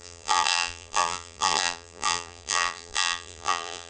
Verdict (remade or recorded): remade